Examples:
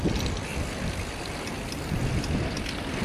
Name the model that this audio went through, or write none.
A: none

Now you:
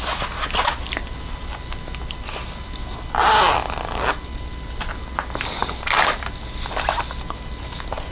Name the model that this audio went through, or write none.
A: none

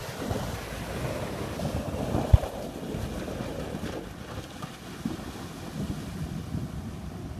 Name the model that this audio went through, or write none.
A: none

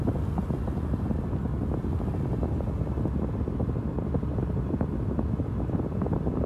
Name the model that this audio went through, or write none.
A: none